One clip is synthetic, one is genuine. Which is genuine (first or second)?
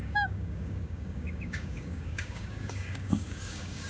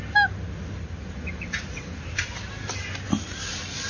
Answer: second